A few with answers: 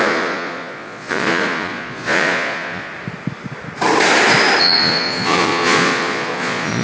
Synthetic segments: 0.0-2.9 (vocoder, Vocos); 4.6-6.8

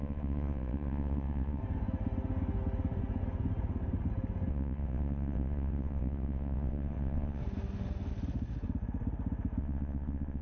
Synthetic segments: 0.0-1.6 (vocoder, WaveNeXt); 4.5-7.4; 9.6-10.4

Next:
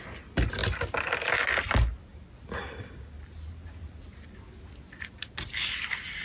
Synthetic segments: none

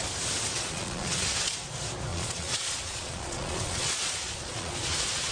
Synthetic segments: 0.5-1.5 (vocoder, Vocos); 2.1-5.3